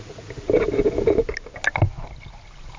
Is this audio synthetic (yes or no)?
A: no